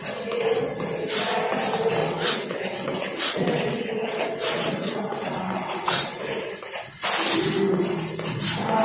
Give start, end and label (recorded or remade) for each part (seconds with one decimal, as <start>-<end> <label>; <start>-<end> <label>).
0.0-2.0 recorded; 2.0-6.2 remade; 6.2-8.8 recorded